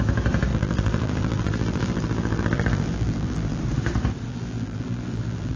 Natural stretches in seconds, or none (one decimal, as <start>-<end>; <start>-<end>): 0.0-0.5; 3.6-4.3